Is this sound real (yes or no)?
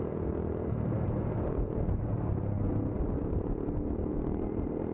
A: yes